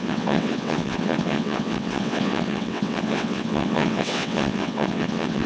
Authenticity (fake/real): fake